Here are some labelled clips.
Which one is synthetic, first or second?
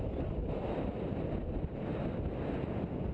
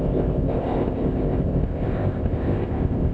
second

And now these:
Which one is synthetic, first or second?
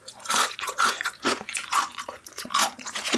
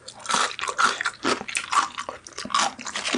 first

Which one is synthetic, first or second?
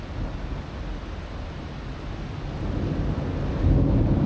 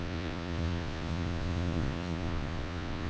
second